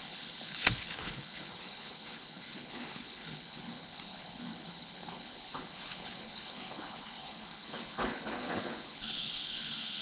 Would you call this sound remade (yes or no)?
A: yes